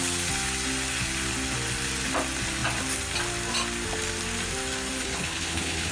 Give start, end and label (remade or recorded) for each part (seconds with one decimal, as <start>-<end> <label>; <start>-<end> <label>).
0.0-5.0 recorded; 5.0-5.9 remade

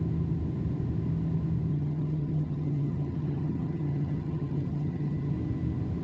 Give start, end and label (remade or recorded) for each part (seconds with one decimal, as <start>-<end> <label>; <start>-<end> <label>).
0.0-1.7 recorded; 1.7-5.3 remade; 5.3-6.0 recorded

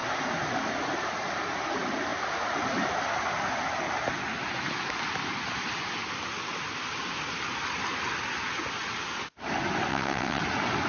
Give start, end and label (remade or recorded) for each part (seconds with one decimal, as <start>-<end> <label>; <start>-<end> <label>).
0.0-9.9 recorded; 9.9-10.4 remade; 10.4-10.9 recorded

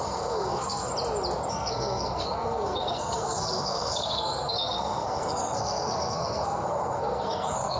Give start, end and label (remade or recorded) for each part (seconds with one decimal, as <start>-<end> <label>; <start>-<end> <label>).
0.0-0.9 remade; 0.9-1.5 recorded; 1.5-7.8 remade